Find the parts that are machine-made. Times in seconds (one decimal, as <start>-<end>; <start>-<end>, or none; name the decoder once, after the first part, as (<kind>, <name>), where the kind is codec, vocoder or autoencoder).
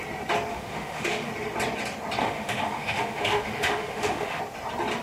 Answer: 0.5-1.3 (autoencoder, DAC-VAE); 2.2-4.4